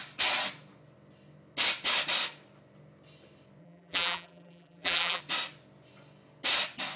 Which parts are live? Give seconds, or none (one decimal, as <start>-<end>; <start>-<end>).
0.0-3.6; 5.2-7.0